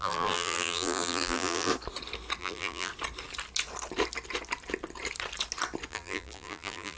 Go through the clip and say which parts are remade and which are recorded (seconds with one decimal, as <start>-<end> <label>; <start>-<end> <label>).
0.0-1.7 remade; 1.7-2.4 recorded; 2.4-2.9 remade; 2.9-5.9 recorded; 5.9-7.0 remade